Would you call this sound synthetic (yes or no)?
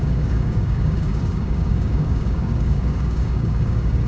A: yes